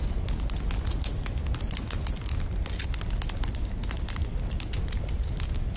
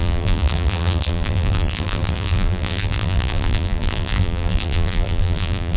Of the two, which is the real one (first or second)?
first